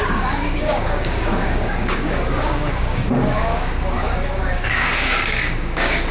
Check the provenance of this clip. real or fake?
fake